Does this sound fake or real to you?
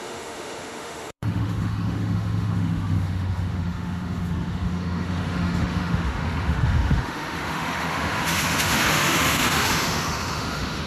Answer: fake